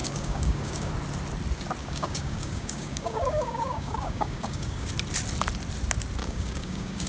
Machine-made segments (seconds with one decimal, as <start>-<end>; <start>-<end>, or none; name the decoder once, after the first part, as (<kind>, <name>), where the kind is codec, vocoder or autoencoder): 0.0-0.9 (codec, DAC); 1.8-4.9; 6.2-7.1